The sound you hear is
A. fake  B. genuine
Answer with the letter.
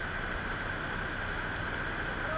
B